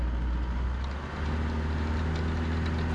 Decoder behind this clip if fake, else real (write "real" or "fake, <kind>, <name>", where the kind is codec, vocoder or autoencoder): real